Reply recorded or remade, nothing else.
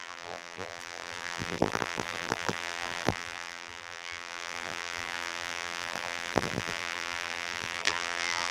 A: remade